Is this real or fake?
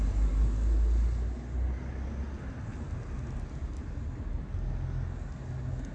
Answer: real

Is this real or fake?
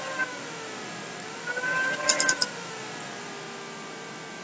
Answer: real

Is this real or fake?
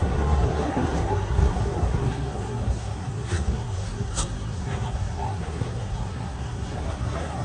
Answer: fake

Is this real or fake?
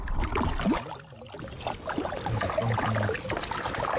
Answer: real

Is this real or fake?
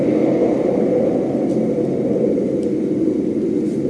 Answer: real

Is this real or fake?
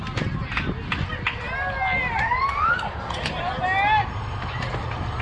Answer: real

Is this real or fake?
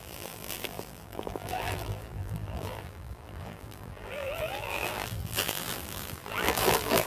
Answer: fake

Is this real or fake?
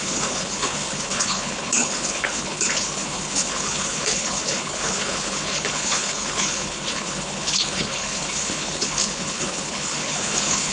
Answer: fake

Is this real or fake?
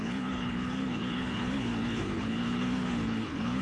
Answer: fake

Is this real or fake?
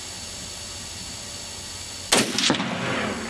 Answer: real